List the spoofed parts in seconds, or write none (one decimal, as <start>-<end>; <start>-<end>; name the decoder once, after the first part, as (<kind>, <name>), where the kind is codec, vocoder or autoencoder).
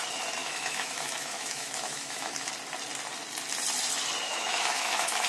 0.4-2.5 (autoencoder, DAC-VAE); 4.3-5.3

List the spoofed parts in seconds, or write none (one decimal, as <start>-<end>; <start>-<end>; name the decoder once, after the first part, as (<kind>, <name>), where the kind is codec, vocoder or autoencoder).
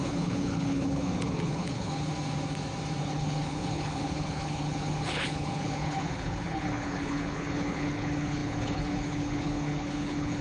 0.0-2.1 (codec, HILCodec); 3.0-10.4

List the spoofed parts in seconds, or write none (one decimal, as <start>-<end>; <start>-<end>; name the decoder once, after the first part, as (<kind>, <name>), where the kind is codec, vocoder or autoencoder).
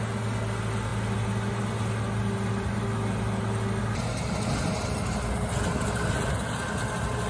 none